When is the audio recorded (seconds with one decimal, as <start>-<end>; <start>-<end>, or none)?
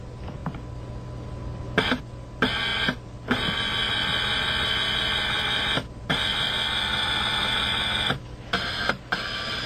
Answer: 0.0-9.7